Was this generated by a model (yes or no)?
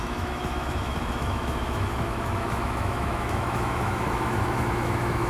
yes